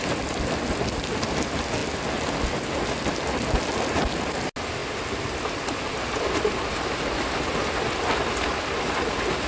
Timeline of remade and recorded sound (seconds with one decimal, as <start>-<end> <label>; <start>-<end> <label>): 0.0-9.5 recorded